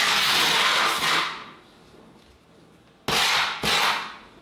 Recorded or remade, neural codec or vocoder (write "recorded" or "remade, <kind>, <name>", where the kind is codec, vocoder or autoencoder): recorded